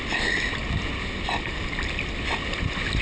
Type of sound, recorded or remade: recorded